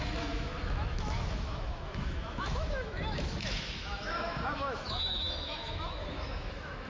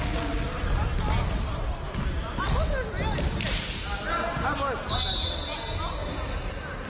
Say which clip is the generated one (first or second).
first